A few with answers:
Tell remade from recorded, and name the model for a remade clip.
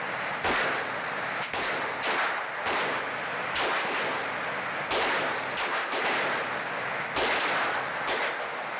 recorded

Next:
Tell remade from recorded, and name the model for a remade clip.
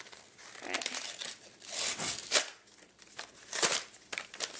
remade, vocoder, BigVGAN v2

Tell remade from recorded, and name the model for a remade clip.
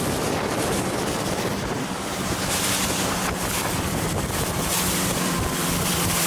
remade, vocoder, BigVGAN v2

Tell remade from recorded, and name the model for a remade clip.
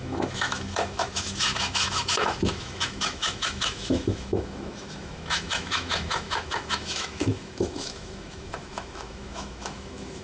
remade, autoencoder, DAC-VAE